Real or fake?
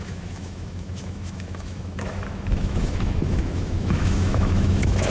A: fake